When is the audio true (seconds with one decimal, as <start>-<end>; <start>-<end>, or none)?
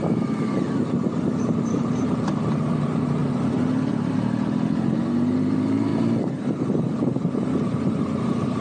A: 3.2-3.9; 5.9-8.2